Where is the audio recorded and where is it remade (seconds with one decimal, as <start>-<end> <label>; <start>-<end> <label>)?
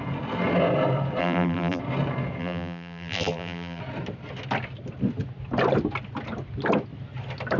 0.0-1.2 recorded; 1.2-1.8 remade; 1.8-2.4 recorded; 2.4-3.8 remade; 3.8-7.6 recorded